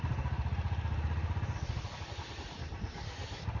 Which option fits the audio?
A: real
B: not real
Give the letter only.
A